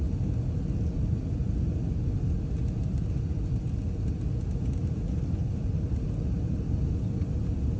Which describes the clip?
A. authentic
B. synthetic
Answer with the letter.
A